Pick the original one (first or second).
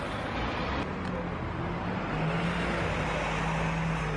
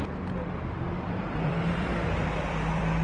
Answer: first